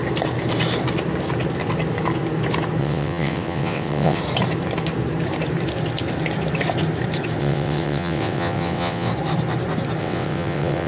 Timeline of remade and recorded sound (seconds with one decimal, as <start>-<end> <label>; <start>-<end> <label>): 0.0-2.8 recorded; 2.8-4.2 remade; 4.2-7.4 recorded; 7.4-9.1 remade; 9.1-10.0 recorded; 10.0-10.9 remade